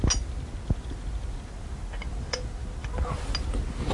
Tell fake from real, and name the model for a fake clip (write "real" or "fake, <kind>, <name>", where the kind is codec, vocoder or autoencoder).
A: real